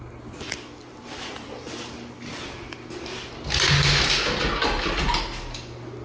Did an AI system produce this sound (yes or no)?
no